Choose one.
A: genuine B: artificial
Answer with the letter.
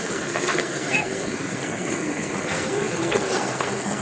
B